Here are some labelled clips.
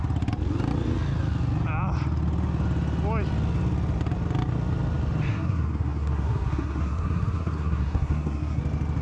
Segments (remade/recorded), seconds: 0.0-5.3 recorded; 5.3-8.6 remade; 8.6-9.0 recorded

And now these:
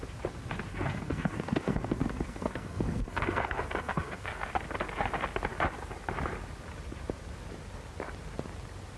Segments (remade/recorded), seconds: 0.0-0.7 recorded; 0.7-4.5 remade; 4.5-9.0 recorded

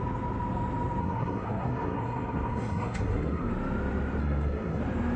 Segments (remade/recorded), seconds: 0.0-1.0 recorded; 1.0-3.5 remade; 3.5-4.2 recorded; 4.2-4.8 remade; 4.8-5.2 recorded

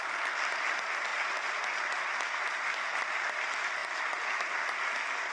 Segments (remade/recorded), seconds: 0.0-5.3 recorded

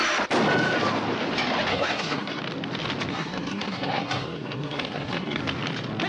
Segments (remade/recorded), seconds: 0.0-1.7 recorded; 1.7-2.4 remade; 2.4-3.1 recorded; 3.1-5.4 remade; 5.4-6.1 recorded

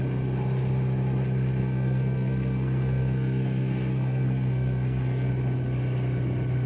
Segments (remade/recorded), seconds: 0.0-1.6 recorded; 1.6-5.3 remade; 5.3-6.7 recorded